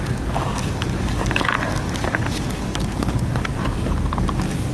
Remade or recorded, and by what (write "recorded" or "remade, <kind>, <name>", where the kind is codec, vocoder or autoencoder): remade, codec, DAC